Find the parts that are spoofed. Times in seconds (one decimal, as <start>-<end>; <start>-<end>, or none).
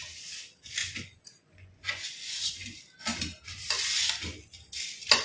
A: 0.8-2.8